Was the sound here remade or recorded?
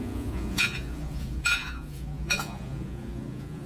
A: remade